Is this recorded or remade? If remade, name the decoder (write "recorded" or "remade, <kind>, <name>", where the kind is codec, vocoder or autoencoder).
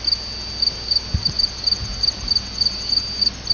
recorded